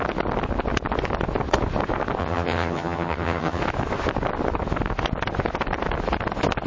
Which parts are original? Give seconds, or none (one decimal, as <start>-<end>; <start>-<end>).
0.0-2.2; 3.6-6.7

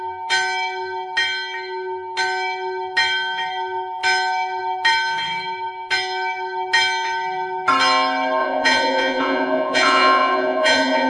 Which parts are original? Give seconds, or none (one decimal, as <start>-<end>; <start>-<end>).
0.0-8.4

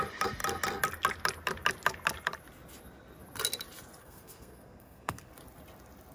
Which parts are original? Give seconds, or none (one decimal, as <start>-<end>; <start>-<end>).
0.0-4.0; 5.3-6.1